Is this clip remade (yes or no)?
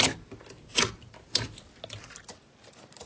no